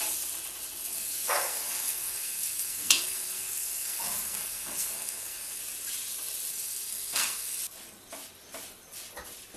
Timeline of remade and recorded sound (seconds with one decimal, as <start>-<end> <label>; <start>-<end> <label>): 0.0-0.9 recorded; 0.9-5.6 remade; 5.6-6.5 recorded; 6.5-7.6 remade; 7.6-9.6 recorded